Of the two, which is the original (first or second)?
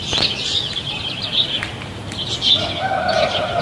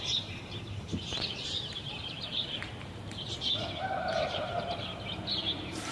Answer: first